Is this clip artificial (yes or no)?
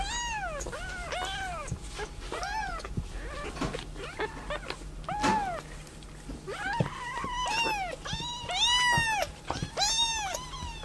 no